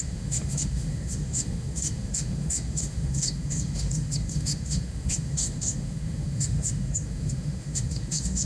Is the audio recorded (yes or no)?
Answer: no